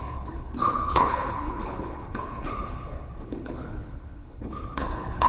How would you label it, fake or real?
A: fake